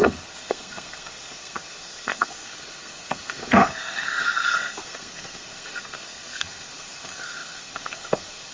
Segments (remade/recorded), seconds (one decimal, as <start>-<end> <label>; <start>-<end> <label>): 0.0-8.5 remade